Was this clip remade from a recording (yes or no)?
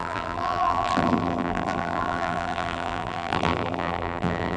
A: yes